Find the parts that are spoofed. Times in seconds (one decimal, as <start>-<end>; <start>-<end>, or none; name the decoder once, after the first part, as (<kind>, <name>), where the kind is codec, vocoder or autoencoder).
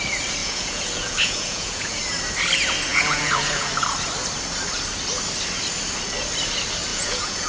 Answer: 0.4-2.0 (vocoder, Vocos); 2.9-3.7; 6.9-7.5